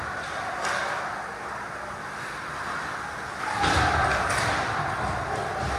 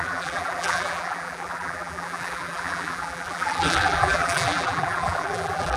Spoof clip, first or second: second